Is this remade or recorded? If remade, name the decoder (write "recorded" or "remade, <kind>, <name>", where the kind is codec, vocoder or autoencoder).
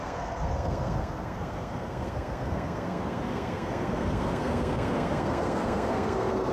remade, codec, SNAC